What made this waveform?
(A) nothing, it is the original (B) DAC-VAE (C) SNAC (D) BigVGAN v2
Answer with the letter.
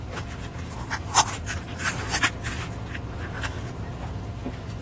A